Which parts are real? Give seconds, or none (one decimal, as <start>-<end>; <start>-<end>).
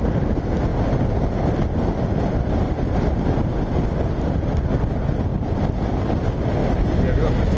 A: 0.0-7.6